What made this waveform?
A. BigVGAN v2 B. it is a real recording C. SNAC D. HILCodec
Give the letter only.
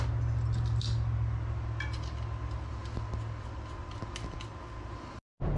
B